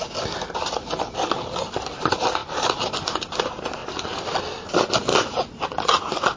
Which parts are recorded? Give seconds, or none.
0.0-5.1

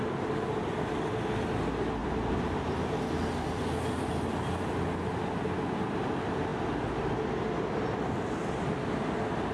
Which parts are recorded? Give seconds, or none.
0.0-2.0; 4.8-9.5

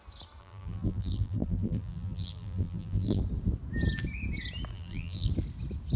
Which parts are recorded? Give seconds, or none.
0.0-0.4; 3.2-4.7; 5.3-6.0

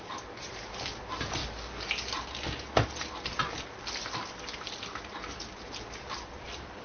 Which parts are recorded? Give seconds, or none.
1.4-5.5

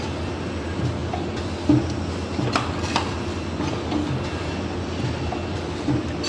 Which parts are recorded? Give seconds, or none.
0.0-6.3

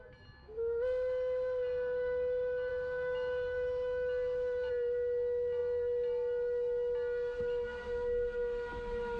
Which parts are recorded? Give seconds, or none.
0.0-9.2

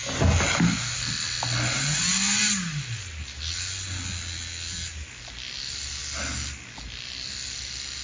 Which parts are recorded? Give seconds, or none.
0.0-8.0

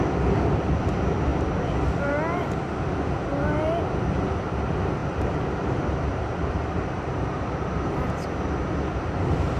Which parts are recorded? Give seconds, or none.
0.0-5.0; 8.5-9.6